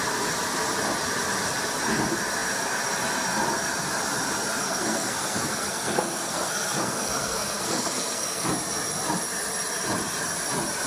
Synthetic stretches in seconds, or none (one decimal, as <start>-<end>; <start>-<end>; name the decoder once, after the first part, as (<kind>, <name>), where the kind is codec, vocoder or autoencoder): 4.6-8.5 (codec, SNAC)